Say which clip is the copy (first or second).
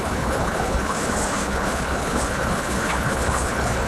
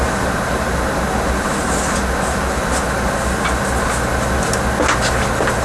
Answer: first